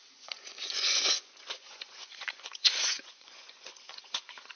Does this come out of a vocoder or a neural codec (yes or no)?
yes